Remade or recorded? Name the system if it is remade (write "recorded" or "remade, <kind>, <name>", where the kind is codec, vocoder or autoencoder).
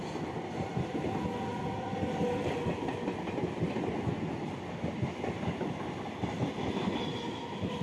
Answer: recorded